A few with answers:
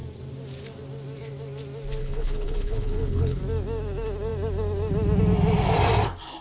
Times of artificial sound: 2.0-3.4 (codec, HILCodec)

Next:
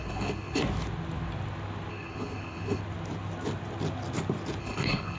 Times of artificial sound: 0.0-0.6 (codec, HILCodec); 1.9-2.8; 4.6-5.2

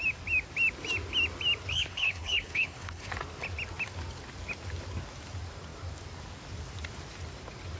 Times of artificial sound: 1.7-3.1 (codec, HILCodec)

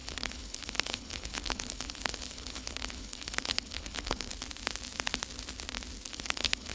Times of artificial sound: 0.0-4.3 (codec, HILCodec); 6.1-6.7

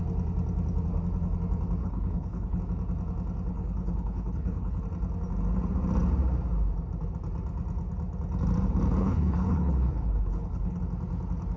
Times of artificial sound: 1.8-2.6 (codec, HILCodec); 3.5-4.8; 9.0-10.8

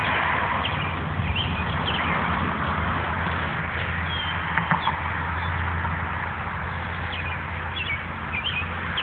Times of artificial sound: none

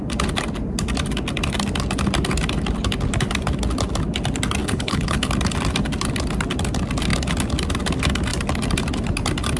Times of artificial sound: 4.6-5.3 (codec, HILCodec)